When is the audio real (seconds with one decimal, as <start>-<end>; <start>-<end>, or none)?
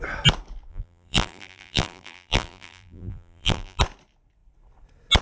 0.0-0.7; 3.8-5.2